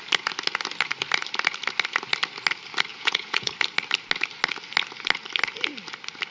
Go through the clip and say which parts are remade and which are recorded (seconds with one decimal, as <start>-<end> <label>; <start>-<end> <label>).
0.0-2.9 recorded; 2.9-3.5 remade; 3.5-6.3 recorded